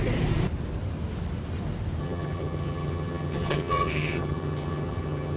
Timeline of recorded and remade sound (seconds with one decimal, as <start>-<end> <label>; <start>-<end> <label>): 0.0-2.0 recorded; 2.0-5.4 remade